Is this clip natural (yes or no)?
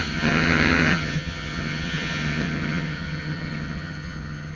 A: no